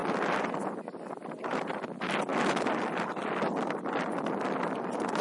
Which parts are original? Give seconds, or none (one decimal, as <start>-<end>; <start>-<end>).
0.0-5.2